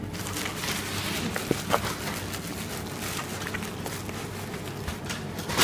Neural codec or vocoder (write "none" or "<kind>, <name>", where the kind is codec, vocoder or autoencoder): none